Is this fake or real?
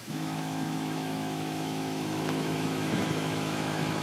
fake